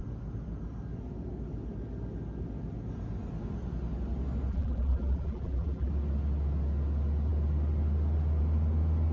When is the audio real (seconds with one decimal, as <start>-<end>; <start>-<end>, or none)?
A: 0.0-4.5; 5.9-9.1